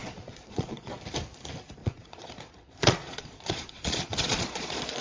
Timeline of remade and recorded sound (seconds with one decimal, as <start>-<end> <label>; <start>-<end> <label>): 0.0-0.9 remade; 0.9-1.8 recorded; 1.8-5.0 remade